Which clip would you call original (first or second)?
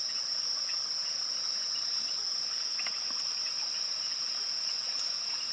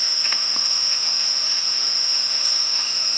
first